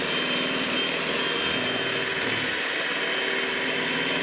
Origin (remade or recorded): recorded